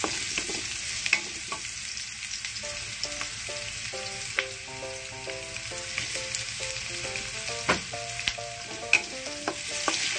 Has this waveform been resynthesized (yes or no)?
no